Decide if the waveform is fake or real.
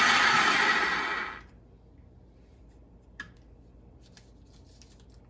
real